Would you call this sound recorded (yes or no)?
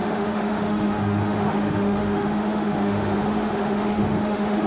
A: no